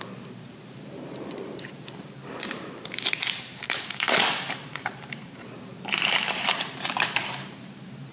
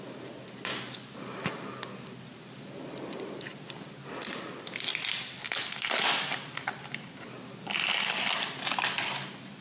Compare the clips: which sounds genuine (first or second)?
second